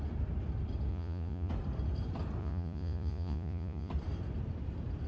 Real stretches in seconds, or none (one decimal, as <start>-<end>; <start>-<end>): 0.0-0.9; 1.5-2.4; 3.9-5.1